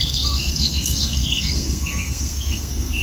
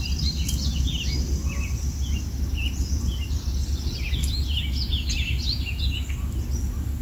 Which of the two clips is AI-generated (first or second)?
first